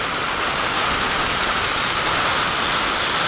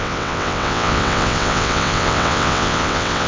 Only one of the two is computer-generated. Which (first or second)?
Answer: second